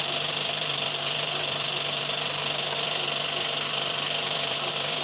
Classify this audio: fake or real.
fake